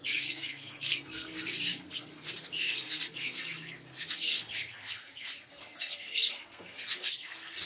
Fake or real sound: fake